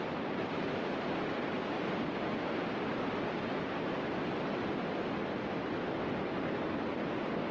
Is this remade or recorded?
recorded